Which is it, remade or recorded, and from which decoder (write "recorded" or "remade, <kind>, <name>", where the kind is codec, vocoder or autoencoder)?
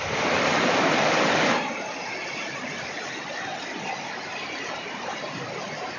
remade, vocoder, BigVGAN v2